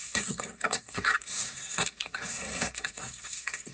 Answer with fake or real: fake